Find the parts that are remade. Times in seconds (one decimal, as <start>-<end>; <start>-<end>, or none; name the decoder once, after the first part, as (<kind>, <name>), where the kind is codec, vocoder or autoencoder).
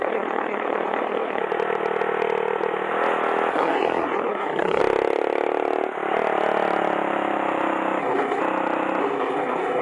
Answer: 0.0-1.4 (codec, SNAC); 3.5-4.8; 8.0-8.4; 9.0-9.8